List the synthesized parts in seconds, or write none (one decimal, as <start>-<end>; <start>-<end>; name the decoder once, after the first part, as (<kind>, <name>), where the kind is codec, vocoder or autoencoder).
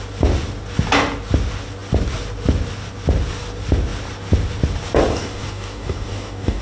5.1-6.6 (codec, DAC)